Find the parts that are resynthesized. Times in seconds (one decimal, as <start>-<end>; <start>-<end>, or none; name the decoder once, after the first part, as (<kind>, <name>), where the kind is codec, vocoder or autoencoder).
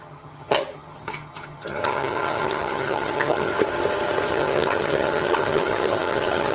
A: 0.0-3.5 (vocoder, HiFi-GAN); 4.3-6.5